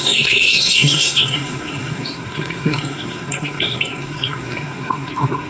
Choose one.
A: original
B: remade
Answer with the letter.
B